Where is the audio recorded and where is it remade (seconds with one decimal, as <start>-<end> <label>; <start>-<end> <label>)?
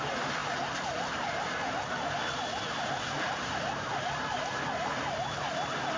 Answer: 0.0-6.0 recorded